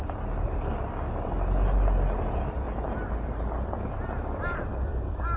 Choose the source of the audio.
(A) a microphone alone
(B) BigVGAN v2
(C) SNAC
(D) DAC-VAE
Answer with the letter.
B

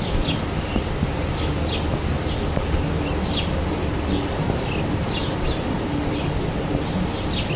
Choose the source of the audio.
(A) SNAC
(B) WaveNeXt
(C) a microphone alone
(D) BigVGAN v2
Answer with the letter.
C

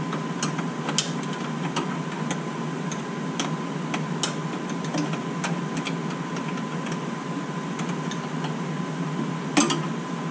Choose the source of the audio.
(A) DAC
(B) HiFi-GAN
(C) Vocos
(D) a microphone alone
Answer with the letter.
D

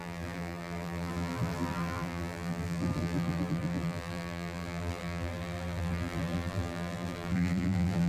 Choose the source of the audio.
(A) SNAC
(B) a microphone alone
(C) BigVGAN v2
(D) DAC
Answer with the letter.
C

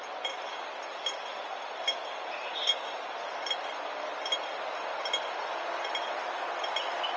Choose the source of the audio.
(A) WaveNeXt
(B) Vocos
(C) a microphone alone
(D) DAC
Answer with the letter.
C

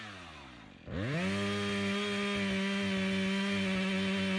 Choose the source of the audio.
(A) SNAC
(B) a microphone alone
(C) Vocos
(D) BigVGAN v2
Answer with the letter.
B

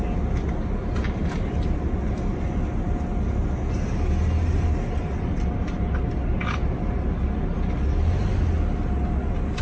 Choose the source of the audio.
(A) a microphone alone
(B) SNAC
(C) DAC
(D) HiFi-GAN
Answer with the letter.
A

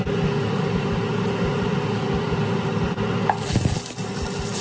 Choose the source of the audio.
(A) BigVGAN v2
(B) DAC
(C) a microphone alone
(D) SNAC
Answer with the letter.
C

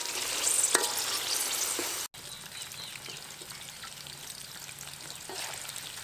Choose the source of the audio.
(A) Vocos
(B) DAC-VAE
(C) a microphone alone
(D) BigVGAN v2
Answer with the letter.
C